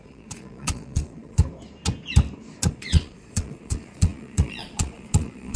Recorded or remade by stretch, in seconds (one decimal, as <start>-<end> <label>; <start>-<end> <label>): 0.0-1.4 remade; 1.4-2.7 recorded; 2.7-5.6 remade